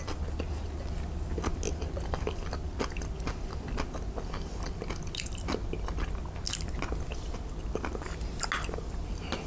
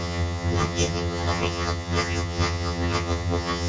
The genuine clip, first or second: first